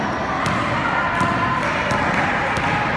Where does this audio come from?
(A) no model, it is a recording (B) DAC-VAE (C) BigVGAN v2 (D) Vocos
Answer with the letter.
A